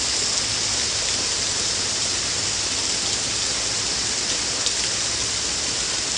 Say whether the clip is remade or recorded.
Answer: recorded